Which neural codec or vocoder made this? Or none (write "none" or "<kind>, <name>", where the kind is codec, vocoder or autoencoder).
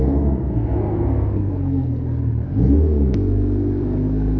codec, SNAC